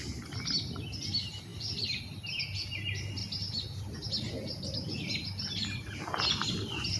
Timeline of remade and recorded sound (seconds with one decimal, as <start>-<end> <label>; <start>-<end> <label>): 0.0-7.0 recorded